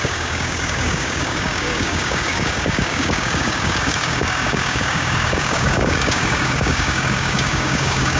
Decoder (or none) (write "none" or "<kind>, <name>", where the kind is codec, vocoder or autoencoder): codec, DAC